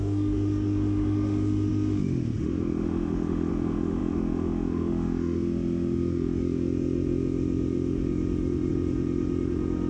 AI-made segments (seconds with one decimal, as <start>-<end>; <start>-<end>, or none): 0.0-9.9